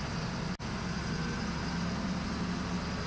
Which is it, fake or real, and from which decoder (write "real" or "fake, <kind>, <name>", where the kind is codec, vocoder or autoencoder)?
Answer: real